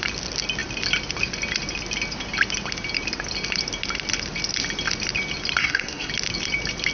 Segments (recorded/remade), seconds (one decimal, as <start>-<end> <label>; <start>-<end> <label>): 0.0-5.6 recorded; 5.6-6.1 remade; 6.1-6.9 recorded